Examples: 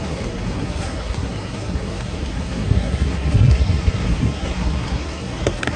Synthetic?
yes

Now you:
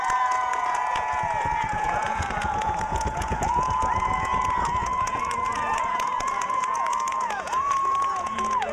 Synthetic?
yes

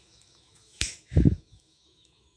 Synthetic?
yes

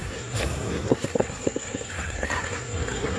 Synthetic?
yes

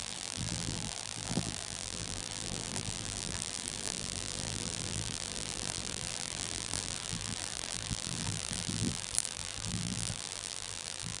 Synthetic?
yes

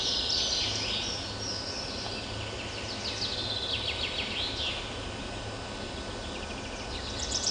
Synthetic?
no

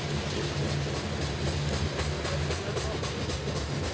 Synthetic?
no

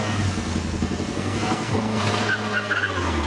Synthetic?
yes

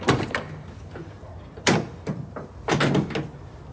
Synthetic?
no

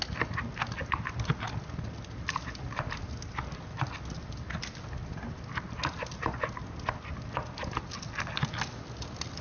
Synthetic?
no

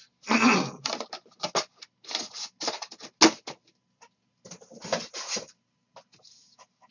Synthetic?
no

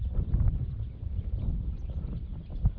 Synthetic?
no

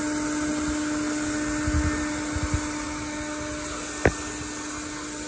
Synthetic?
no